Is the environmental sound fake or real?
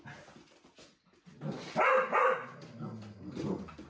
real